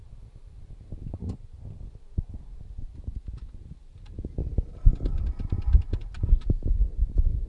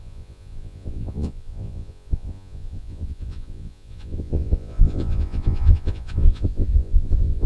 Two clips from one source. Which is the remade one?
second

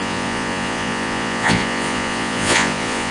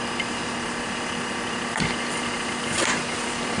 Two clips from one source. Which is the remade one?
first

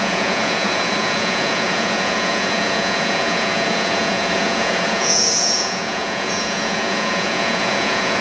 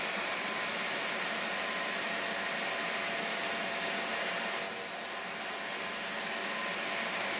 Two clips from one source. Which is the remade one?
first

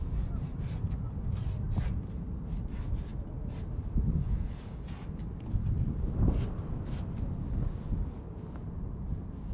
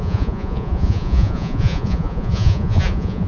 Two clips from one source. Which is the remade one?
second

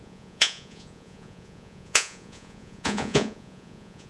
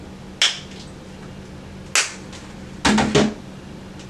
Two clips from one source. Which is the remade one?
first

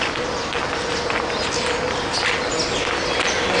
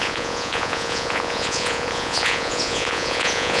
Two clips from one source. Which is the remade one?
second